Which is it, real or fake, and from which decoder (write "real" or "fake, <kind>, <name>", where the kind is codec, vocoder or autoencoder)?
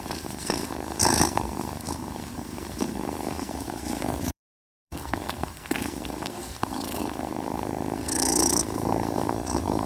fake, codec, SNAC